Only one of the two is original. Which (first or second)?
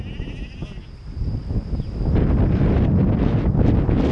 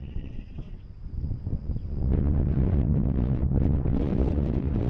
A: first